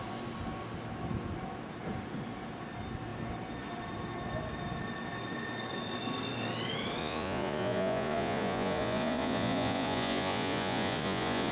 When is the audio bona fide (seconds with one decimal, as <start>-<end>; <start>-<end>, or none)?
0.0-7.0